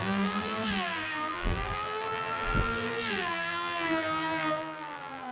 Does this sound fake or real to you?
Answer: fake